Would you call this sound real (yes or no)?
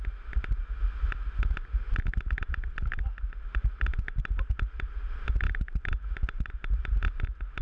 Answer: yes